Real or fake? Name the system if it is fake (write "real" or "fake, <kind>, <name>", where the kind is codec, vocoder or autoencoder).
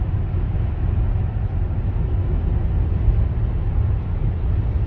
real